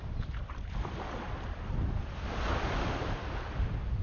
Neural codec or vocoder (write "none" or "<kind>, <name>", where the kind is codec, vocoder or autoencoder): none